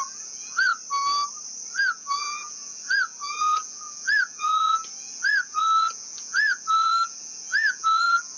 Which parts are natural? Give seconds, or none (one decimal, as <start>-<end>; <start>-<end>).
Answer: 0.7-1.7